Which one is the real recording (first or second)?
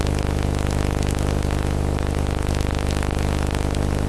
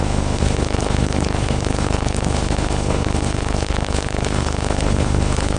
first